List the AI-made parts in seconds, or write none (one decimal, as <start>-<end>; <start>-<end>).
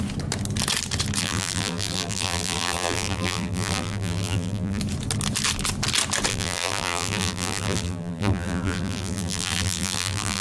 1.2-4.8; 6.3-10.4